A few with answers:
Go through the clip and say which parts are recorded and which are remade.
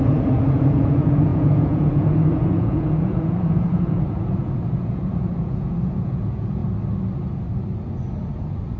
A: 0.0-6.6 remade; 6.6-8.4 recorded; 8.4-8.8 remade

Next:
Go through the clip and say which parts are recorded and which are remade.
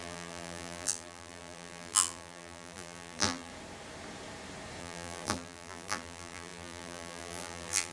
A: 0.0-3.5 remade; 3.5-4.8 recorded; 4.8-7.9 remade